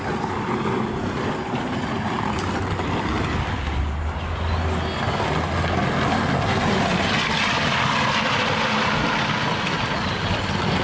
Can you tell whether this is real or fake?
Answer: real